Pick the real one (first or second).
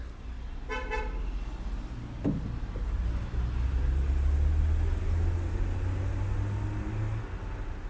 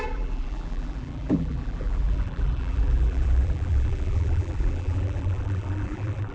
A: first